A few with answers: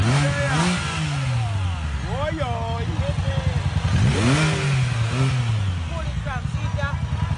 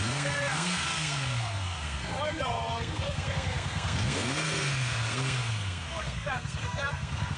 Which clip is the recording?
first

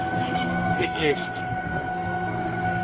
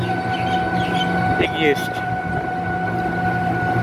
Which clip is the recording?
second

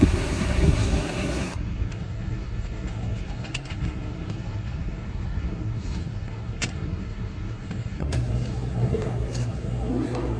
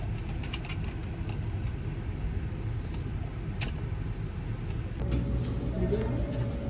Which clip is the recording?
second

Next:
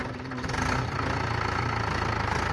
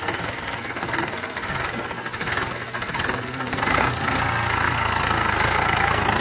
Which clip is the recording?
first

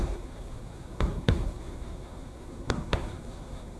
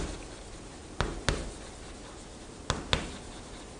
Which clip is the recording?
second